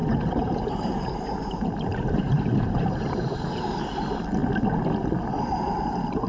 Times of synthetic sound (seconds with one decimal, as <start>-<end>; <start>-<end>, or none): 0.0-3.8